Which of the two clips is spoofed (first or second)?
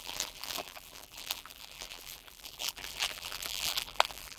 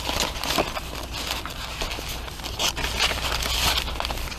first